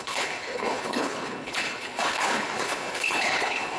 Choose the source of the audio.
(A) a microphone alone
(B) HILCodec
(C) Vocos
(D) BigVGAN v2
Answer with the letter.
B